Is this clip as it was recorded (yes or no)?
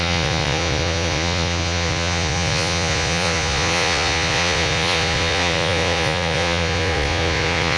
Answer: no